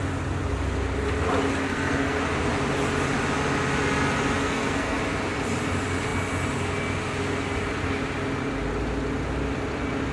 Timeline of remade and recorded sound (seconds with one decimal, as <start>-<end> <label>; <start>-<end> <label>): 0.0-1.6 recorded; 1.6-2.2 remade; 2.2-4.4 recorded; 4.4-5.0 remade; 5.0-10.1 recorded